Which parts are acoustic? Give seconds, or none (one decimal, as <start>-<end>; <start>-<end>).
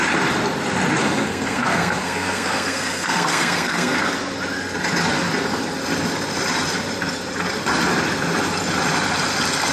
0.0-1.0; 4.0-9.7